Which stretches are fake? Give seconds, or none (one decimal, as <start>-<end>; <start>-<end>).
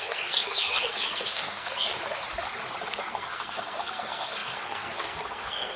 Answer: 0.0-1.9; 3.0-5.8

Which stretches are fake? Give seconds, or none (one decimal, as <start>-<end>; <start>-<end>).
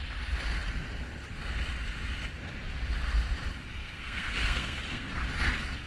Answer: 3.8-5.2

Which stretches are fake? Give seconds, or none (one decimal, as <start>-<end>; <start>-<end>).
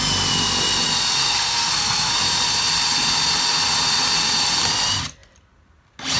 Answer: 1.2-2.2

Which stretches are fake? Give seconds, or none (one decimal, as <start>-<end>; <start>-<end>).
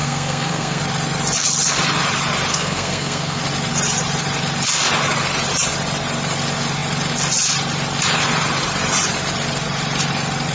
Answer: 0.0-0.8; 2.5-3.4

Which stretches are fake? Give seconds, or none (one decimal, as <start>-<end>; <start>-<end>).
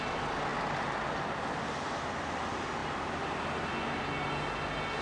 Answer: none